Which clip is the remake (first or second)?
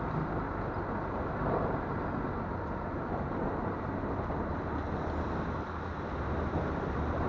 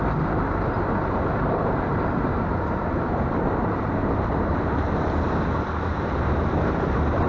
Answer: second